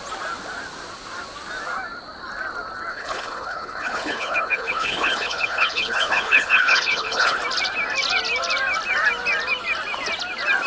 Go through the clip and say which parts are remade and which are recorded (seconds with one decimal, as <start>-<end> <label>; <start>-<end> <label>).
0.0-2.9 recorded; 2.9-7.4 remade; 7.4-10.7 recorded